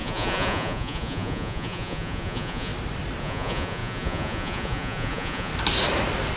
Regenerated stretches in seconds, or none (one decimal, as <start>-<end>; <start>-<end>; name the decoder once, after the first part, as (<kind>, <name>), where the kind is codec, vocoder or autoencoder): 0.0-2.7 (vocoder, Vocos); 3.2-5.5